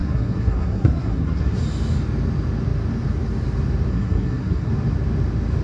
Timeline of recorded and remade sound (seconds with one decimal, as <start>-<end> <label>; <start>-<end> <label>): 0.0-1.6 remade; 1.6-3.9 recorded; 3.9-4.7 remade; 4.7-5.6 recorded